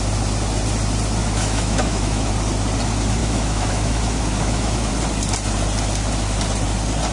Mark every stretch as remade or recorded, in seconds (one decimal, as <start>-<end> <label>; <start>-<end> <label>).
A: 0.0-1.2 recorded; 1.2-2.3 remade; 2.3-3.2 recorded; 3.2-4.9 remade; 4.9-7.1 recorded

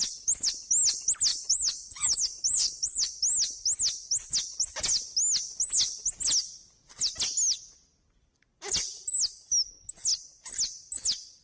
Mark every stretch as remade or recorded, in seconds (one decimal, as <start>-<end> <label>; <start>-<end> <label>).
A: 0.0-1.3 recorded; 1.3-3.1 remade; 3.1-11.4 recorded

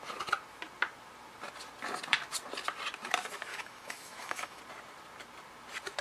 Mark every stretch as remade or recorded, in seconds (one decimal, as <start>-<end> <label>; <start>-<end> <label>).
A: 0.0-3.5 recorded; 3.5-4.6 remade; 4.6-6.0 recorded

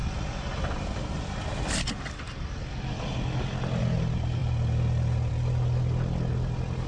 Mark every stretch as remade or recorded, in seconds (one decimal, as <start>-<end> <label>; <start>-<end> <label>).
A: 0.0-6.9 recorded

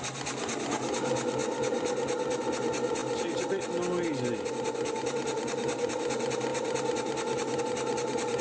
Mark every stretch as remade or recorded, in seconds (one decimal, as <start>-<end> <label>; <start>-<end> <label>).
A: 0.0-8.4 recorded

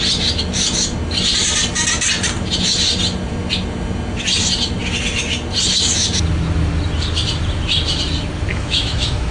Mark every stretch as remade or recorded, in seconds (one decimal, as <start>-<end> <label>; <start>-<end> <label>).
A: 0.0-8.5 recorded; 8.5-9.3 remade

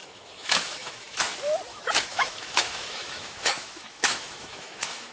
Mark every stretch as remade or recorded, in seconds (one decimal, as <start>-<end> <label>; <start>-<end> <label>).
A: 0.0-1.2 remade; 1.2-1.7 recorded; 1.7-5.1 remade

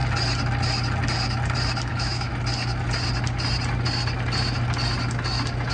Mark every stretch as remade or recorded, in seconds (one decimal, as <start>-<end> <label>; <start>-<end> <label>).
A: 0.0-1.9 recorded; 1.9-2.3 remade; 2.3-5.7 recorded